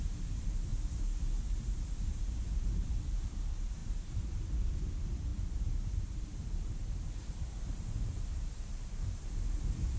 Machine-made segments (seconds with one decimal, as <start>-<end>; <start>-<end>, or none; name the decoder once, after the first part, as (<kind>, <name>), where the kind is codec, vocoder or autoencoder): 0.0-0.7 (vocoder, BigVGAN v2); 1.7-10.0